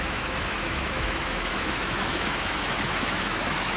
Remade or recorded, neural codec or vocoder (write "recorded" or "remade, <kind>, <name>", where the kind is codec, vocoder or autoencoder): remade, autoencoder, DAC-VAE